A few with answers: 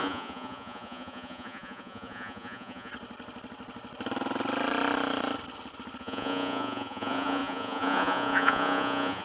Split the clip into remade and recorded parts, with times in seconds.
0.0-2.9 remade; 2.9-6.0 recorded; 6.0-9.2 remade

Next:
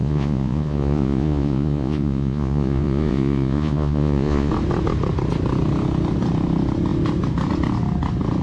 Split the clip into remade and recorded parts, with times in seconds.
0.0-4.5 remade; 4.5-8.4 recorded